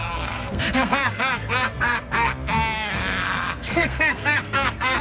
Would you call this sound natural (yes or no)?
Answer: no